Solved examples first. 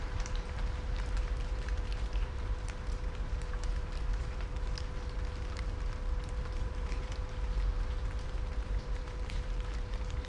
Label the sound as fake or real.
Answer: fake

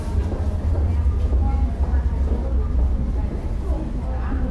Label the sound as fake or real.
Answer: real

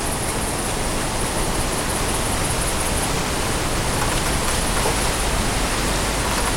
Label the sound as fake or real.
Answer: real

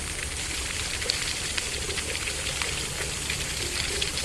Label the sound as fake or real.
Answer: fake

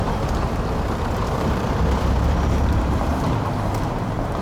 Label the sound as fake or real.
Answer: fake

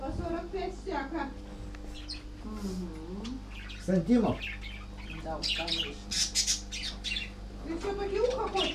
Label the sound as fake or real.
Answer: real